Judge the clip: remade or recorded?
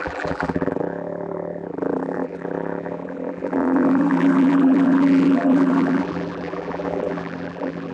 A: remade